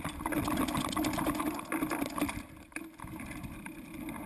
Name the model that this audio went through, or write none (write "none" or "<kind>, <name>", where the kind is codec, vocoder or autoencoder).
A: none